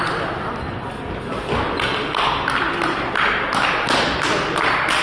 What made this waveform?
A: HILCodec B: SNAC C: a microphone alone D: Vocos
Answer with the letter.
C